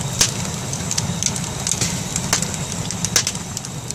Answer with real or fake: real